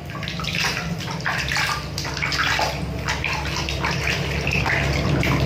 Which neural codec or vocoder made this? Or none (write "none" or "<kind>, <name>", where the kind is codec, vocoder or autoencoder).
none